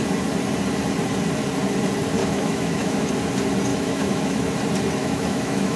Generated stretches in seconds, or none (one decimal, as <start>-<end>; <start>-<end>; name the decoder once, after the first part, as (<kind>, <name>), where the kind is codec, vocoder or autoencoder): 2.2-3.1 (autoencoder, DAC-VAE); 3.7-4.5; 5.0-5.8